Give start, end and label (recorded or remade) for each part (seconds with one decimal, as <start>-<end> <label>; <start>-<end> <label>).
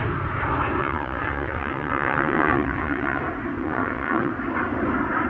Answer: 0.0-0.8 recorded; 0.8-3.2 remade; 3.2-3.6 recorded; 3.6-4.3 remade; 4.3-5.3 recorded